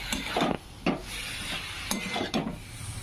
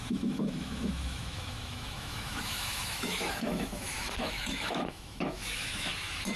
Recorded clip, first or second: first